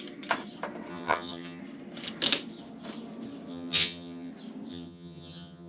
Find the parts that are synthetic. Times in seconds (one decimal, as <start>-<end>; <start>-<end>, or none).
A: 0.9-1.6; 3.5-4.3; 4.7-5.7